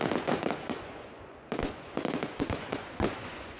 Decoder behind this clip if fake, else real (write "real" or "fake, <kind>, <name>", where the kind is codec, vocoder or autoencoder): fake, vocoder, Vocos